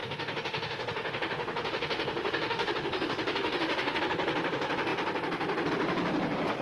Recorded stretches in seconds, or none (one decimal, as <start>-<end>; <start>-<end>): 4.0-6.6

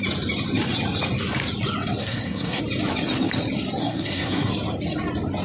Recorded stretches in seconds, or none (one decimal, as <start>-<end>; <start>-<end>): 0.0-2.0; 2.6-3.8; 4.5-5.4